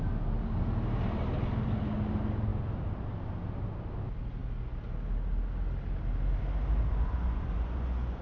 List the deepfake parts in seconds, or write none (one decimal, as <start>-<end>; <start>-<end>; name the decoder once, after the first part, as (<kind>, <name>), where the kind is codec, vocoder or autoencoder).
6.9-8.2 (vocoder, Vocos)